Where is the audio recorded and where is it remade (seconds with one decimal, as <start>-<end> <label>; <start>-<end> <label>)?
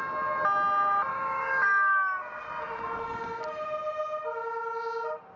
0.0-1.1 recorded; 1.1-2.3 remade; 2.3-5.4 recorded